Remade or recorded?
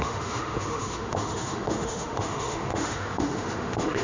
remade